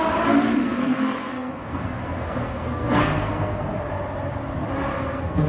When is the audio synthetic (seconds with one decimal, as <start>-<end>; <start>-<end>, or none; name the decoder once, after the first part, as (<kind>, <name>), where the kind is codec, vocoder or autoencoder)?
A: 0.6-3.9 (codec, SNAC); 4.9-5.5